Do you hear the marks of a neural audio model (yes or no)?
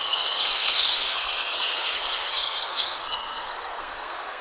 yes